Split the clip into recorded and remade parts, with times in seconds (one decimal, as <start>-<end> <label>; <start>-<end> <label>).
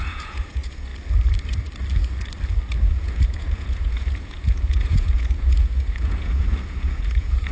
0.0-0.9 remade; 0.9-2.9 recorded; 2.9-7.5 remade